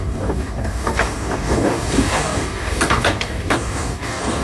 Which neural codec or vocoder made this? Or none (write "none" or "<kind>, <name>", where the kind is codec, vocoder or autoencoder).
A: codec, DAC